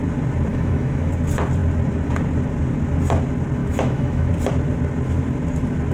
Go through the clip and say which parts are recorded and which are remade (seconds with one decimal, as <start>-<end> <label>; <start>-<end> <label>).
0.0-0.5 recorded; 0.5-1.1 remade; 1.1-3.6 recorded; 3.6-4.3 remade; 4.3-5.9 recorded